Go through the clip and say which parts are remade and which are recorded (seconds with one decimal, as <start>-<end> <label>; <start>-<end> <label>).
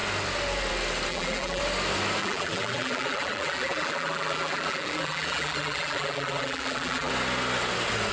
0.0-1.1 recorded; 1.1-1.6 remade; 1.6-2.2 recorded; 2.2-7.1 remade; 7.1-8.1 recorded